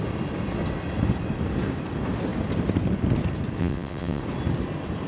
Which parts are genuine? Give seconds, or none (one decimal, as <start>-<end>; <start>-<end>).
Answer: 0.0-3.6; 4.2-5.1